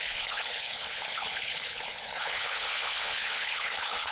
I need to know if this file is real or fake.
fake